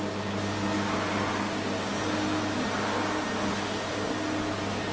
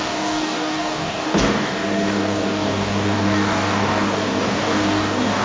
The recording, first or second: first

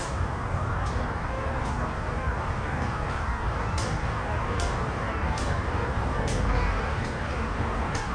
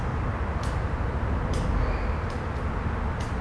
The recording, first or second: second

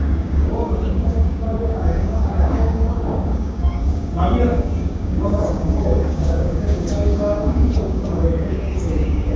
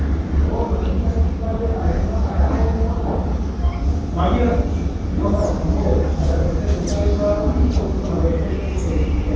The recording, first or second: second